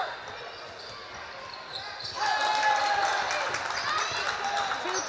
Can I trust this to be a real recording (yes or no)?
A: yes